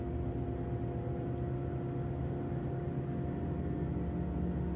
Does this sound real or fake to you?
real